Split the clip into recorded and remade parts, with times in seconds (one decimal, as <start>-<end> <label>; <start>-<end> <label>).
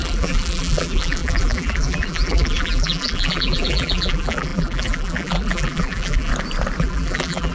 0.0-6.3 remade; 6.3-6.8 recorded; 6.8-7.5 remade